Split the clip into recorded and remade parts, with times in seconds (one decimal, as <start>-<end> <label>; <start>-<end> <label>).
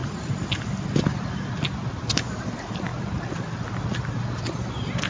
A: 0.0-5.1 recorded